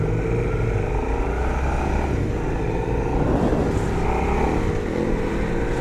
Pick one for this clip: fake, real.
real